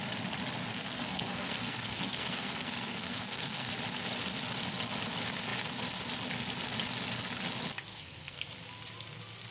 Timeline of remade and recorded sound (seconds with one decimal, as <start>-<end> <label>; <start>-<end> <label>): 0.0-0.7 recorded; 0.7-3.7 remade; 3.7-7.9 recorded; 7.9-8.5 remade; 8.5-9.5 recorded